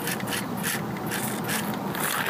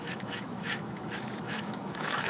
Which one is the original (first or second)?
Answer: first